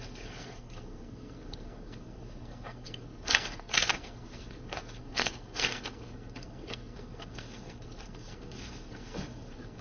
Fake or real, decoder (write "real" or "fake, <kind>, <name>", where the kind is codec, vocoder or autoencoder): fake, codec, SNAC